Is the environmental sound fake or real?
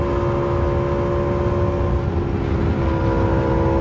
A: real